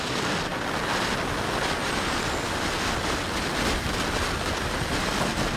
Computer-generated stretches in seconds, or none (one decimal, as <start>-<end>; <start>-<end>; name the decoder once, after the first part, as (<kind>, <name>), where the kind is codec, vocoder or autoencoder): none